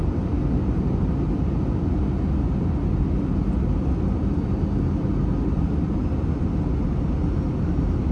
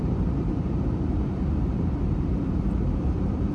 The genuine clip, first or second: first